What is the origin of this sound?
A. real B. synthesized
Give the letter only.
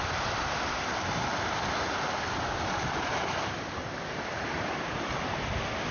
A